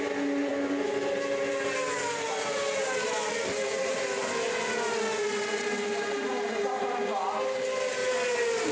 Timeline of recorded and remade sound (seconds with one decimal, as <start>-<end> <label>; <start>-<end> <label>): 0.0-8.7 recorded